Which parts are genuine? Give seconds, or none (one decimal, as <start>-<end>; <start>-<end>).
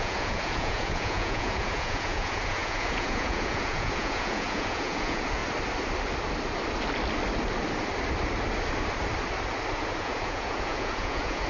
5.4-10.0